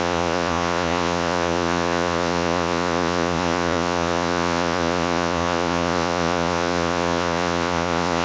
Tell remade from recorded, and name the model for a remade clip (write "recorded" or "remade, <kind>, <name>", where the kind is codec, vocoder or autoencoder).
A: remade, vocoder, Vocos